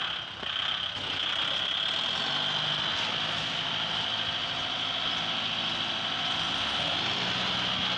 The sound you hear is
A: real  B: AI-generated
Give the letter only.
A